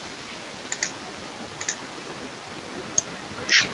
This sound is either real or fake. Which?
real